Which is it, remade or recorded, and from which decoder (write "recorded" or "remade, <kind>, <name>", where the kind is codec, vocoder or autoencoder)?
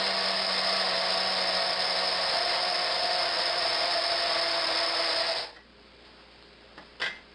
recorded